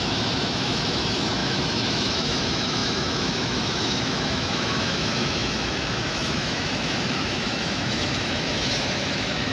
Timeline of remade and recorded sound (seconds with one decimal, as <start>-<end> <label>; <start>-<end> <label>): 0.0-9.5 remade